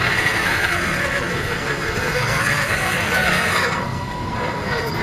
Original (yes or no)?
no